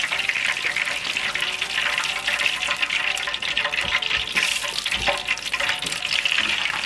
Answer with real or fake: real